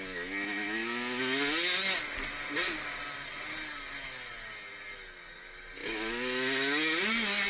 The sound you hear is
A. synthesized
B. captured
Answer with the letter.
B